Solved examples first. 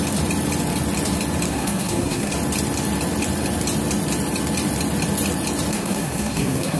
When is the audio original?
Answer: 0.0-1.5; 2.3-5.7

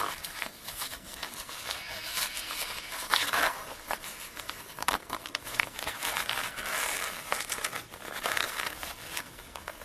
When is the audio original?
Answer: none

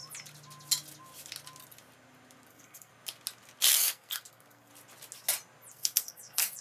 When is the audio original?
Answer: 0.0-2.5; 2.9-3.7; 4.7-5.7

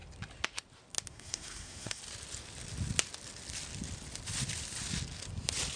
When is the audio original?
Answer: 0.0-1.1; 2.0-5.8

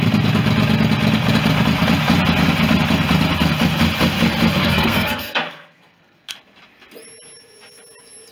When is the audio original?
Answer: 0.0-4.6; 6.3-8.3